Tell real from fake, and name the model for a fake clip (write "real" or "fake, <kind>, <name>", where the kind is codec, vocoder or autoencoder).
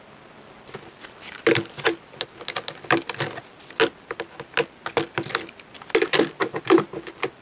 real